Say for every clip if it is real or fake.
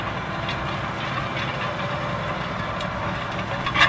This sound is real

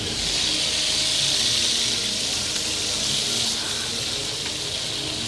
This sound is real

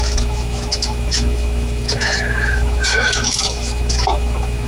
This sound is fake